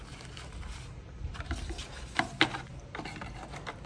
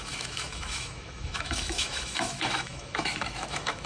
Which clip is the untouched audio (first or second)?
first